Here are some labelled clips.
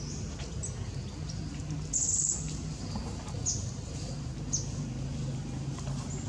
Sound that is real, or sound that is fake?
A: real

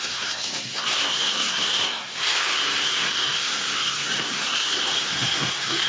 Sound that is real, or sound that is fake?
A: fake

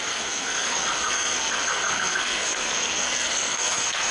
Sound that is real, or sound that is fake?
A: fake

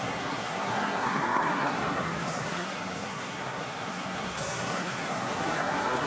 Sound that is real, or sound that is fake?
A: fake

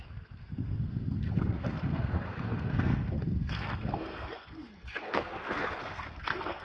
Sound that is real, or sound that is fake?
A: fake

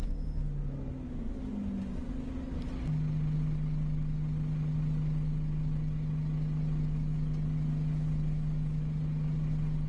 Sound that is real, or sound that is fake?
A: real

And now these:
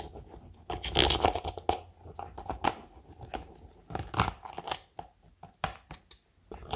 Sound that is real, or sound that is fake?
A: real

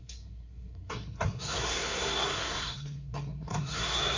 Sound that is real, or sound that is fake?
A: fake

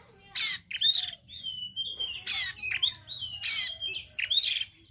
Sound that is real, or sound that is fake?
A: real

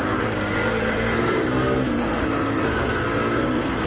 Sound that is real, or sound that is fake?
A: fake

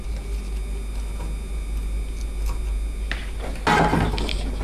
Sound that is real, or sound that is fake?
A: real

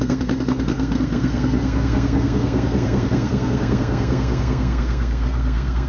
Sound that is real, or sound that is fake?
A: fake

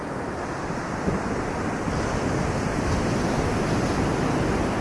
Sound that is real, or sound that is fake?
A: real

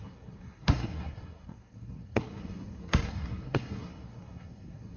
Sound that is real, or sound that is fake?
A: fake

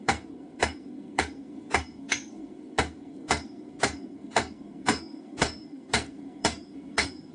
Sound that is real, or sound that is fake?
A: fake